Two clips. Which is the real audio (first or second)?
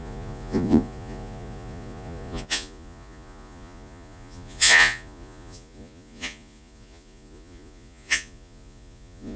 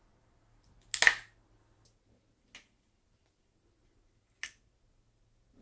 second